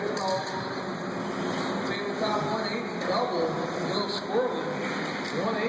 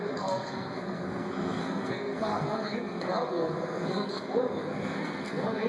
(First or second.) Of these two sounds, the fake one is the second